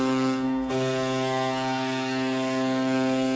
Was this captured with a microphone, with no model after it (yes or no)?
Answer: no